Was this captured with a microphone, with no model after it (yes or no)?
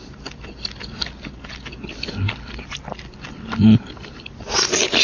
yes